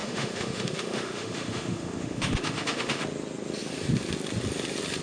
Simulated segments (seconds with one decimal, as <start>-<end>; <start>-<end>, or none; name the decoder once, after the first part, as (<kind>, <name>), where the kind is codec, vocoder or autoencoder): 0.0-3.0 (autoencoder, DAC-VAE)

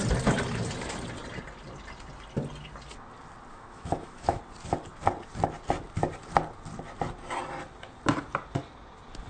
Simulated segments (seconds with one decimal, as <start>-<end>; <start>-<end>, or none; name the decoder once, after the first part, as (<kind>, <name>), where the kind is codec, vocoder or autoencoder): 3.5-4.4 (autoencoder, DAC-VAE)

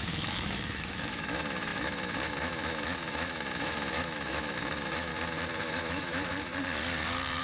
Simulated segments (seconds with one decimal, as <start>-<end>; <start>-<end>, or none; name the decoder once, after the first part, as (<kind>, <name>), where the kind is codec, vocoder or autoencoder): 0.0-5.1 (autoencoder, DAC-VAE); 5.6-6.5

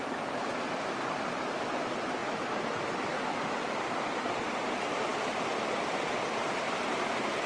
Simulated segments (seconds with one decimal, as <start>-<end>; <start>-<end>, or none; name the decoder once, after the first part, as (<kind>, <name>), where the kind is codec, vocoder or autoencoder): none

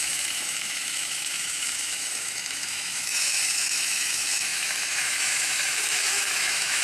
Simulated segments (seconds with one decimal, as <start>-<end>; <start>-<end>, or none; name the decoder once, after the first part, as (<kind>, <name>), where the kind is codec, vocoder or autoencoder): 0.0-6.8 (autoencoder, DAC-VAE)

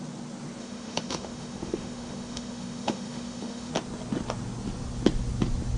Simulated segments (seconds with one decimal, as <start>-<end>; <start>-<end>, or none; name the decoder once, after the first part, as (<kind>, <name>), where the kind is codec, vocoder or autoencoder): 0.6-3.7 (autoencoder, DAC-VAE)

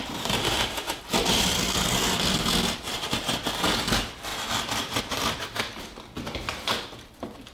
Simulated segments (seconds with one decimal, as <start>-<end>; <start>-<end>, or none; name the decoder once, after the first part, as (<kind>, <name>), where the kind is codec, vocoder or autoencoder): 0.4-1.0 (autoencoder, DAC-VAE)

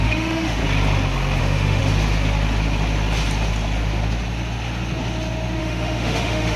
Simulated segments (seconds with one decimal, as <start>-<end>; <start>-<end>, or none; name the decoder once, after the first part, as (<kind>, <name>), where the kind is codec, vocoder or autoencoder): 0.0-0.6 (autoencoder, DAC-VAE); 1.4-1.8; 5.6-6.6